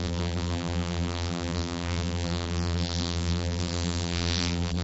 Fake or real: fake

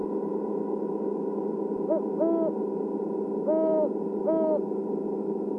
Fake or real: real